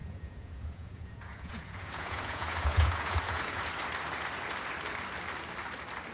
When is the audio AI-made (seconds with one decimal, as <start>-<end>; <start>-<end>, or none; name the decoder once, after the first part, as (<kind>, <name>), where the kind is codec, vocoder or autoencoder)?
0.0-3.7 (vocoder, Vocos)